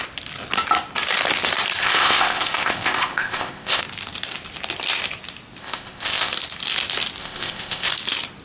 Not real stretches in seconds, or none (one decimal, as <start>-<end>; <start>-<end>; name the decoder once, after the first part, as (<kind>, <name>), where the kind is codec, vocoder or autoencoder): 1.8-3.8 (codec, ZipCodec); 5.6-6.3; 7.2-7.9